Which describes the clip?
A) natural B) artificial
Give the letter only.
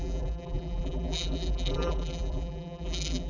B